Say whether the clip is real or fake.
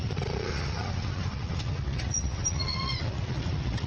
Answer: fake